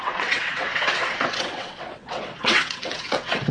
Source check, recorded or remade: remade